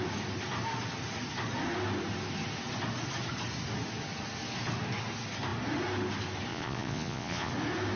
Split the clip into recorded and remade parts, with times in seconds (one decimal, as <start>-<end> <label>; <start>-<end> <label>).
0.0-6.5 recorded; 6.5-7.5 remade; 7.5-8.0 recorded